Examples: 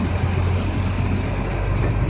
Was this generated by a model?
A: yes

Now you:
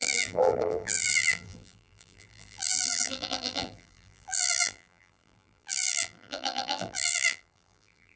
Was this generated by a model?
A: yes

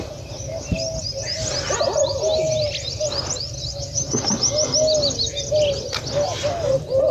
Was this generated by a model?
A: no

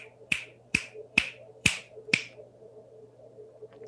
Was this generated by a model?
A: yes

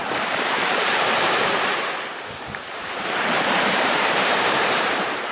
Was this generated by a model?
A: yes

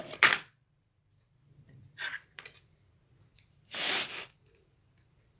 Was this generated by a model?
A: yes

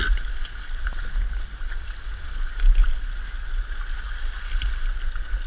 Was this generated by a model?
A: no